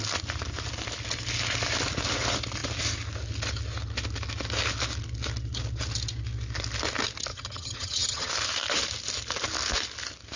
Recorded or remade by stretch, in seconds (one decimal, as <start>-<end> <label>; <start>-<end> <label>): 0.0-7.3 recorded; 7.3-8.3 remade; 8.3-10.4 recorded